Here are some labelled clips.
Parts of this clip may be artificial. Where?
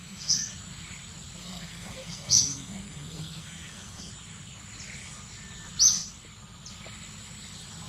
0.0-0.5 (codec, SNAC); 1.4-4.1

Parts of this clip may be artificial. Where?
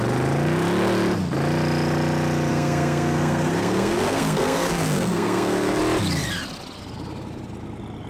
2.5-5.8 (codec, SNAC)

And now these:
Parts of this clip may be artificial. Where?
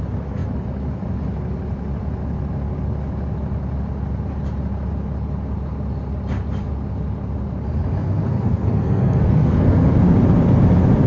8.3-9.9 (codec, SNAC)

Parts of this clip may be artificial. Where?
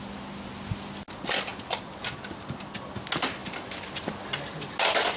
none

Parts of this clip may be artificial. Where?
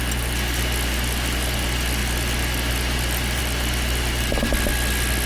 none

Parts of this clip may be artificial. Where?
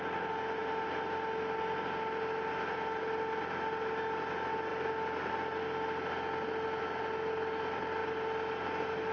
none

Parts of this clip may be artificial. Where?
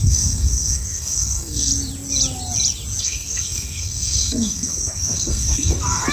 0.0-1.7 (codec, SNAC); 3.0-6.1